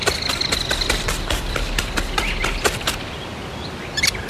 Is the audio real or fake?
real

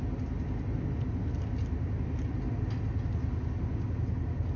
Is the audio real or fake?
real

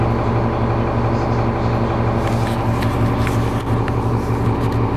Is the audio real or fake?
real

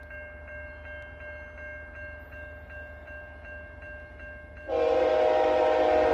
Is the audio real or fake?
real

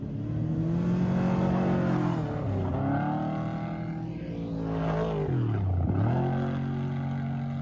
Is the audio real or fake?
real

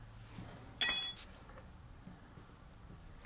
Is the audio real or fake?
real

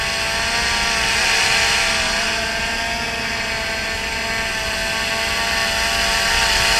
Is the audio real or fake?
real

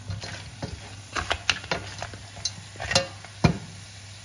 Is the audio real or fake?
real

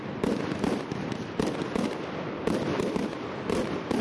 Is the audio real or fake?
real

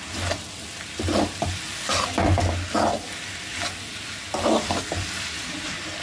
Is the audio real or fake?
real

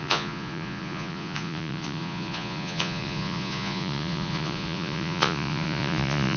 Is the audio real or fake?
fake